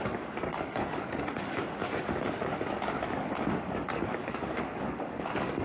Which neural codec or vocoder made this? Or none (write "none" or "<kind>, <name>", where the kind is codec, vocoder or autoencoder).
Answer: codec, DAC